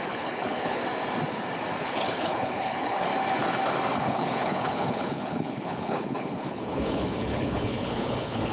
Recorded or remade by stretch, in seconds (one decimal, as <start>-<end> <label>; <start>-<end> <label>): 0.0-0.8 remade; 0.8-1.8 recorded; 1.8-3.1 remade; 3.1-4.0 recorded; 4.0-8.5 remade